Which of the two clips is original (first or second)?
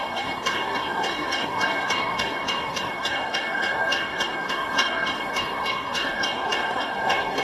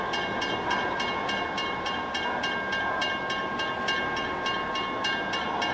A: second